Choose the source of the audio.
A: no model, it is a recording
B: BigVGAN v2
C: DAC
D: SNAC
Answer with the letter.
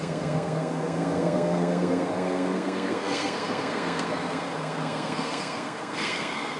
D